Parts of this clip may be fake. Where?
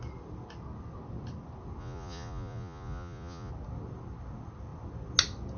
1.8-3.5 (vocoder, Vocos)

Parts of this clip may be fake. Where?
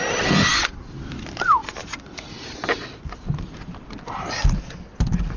none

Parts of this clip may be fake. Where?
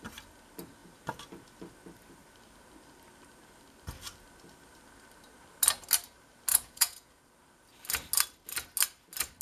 6.5-7.2 (vocoder, Vocos)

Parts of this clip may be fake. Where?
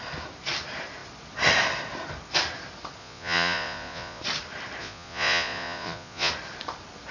3.0-4.2 (vocoder, Vocos); 4.8-6.3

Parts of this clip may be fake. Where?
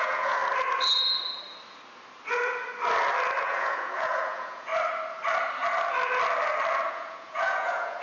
0.0-0.4 (vocoder, Vocos); 3.4-4.7; 6.9-8.0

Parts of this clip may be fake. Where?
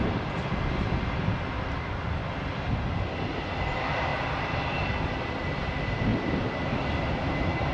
none